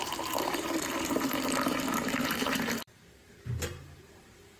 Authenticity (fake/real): fake